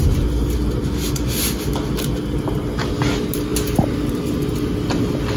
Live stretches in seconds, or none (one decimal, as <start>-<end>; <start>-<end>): 0.0-5.4